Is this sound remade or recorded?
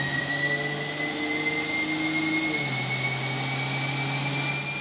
recorded